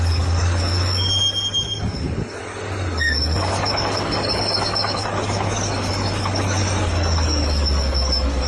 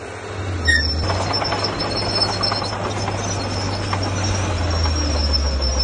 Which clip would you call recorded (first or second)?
second